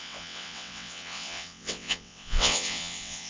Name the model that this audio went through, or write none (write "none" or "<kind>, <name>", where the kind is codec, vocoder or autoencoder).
vocoder, WaveNeXt